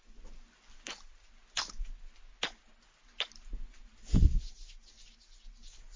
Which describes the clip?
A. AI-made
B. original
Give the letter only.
B